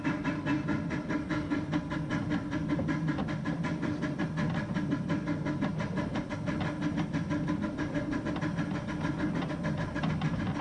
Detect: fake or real real